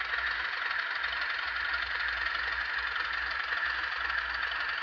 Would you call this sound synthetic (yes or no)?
no